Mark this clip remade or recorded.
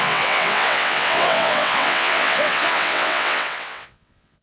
remade